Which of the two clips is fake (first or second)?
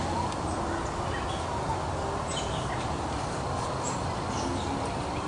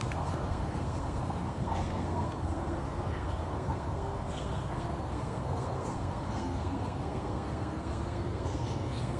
second